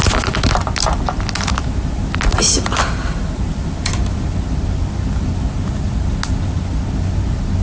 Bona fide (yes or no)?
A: yes